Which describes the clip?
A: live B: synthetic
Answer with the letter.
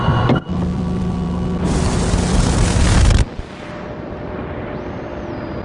B